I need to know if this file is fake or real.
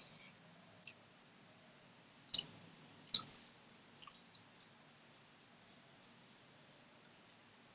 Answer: real